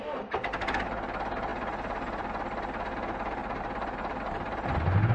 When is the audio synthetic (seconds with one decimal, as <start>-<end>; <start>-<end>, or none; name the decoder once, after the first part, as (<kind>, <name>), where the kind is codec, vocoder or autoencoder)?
none